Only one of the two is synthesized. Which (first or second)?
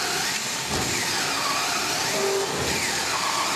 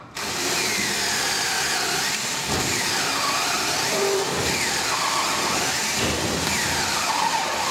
second